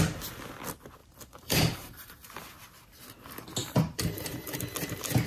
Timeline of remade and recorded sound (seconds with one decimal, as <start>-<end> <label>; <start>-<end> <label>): 0.0-1.0 recorded; 1.0-2.3 remade; 2.3-3.6 recorded; 3.6-4.6 remade; 4.6-5.3 recorded